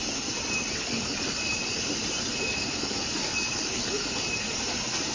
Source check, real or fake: real